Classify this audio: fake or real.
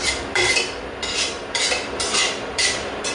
fake